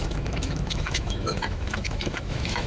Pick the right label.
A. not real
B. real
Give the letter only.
A